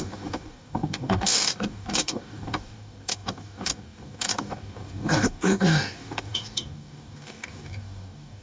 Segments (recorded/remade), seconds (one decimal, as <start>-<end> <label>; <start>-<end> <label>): 0.0-8.4 remade